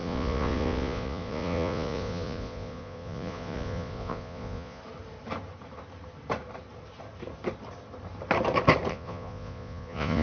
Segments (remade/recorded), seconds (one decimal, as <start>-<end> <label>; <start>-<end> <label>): 0.0-4.8 remade; 4.8-8.9 recorded; 8.9-10.2 remade